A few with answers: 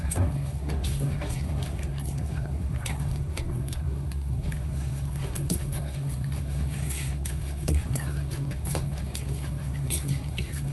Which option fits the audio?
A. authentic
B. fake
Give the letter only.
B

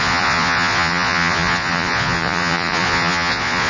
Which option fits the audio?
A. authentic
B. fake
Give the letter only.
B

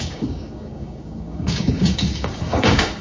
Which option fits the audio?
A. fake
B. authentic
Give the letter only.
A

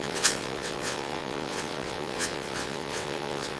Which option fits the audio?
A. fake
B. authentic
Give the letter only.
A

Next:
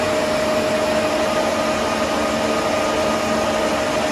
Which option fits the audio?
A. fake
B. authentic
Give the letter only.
B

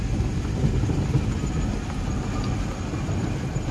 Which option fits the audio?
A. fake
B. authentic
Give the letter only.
B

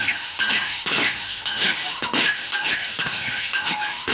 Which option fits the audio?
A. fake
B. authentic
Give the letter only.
A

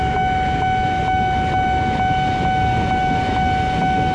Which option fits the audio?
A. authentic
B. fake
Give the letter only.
A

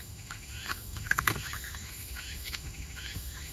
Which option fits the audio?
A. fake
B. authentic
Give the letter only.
A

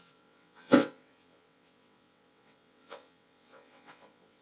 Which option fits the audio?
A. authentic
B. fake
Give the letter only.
B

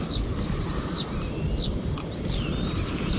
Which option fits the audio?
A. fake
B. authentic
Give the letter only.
B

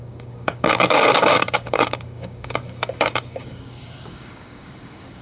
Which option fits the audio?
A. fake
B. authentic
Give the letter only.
A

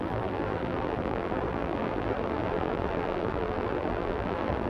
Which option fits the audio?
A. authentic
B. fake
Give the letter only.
B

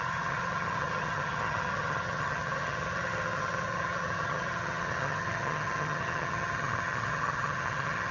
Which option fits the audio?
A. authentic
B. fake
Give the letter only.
B